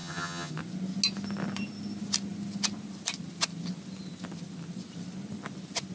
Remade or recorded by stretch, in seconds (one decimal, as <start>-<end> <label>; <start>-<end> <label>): 0.0-0.5 remade; 0.5-5.9 recorded